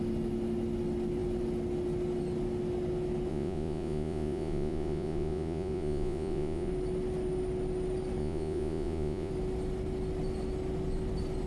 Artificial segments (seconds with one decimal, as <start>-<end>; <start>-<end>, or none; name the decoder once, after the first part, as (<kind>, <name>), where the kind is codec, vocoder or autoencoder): 3.3-6.7 (vocoder, Vocos); 8.2-9.3